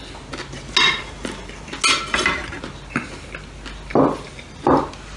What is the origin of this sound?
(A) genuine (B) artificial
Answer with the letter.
A